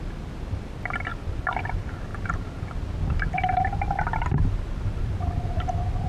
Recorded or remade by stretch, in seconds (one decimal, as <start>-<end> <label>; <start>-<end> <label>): 0.0-6.1 recorded